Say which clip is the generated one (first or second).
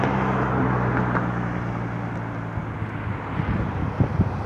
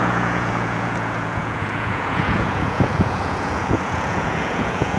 second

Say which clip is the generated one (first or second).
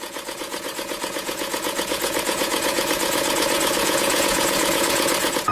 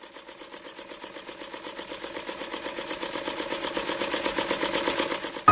first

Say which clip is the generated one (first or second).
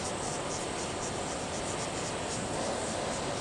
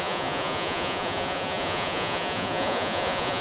second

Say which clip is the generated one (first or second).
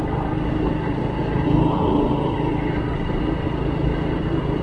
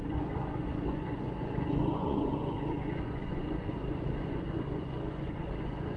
second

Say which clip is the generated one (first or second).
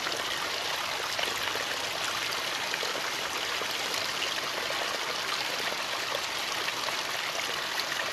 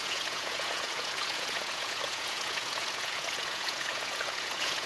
second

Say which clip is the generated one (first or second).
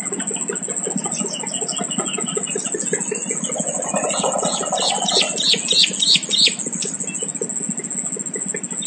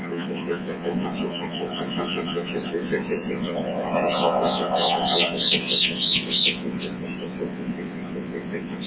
second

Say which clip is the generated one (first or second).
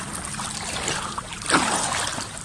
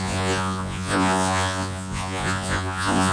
second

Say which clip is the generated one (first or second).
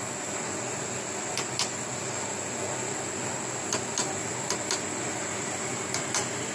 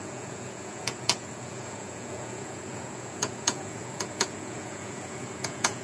second